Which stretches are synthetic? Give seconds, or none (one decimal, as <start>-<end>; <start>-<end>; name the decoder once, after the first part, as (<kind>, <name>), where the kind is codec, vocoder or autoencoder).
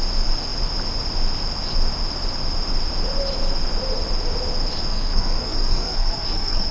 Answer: 4.9-6.7 (codec, SNAC)